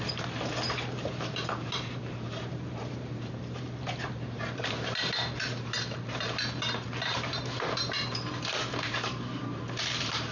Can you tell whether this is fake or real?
fake